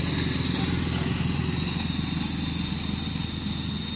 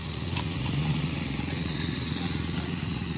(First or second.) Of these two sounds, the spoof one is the second